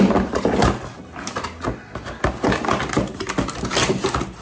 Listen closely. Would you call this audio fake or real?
real